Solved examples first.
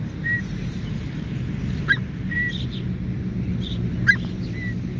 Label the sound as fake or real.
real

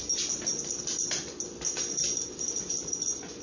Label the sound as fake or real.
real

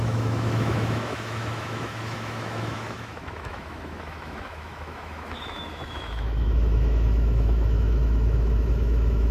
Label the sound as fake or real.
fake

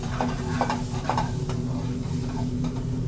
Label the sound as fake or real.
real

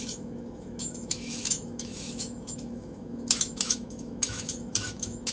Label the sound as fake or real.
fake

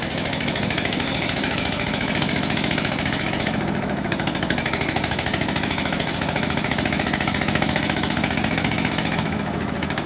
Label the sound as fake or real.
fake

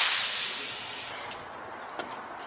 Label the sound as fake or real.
real